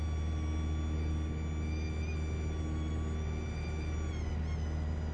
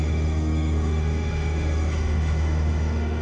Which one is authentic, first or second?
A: first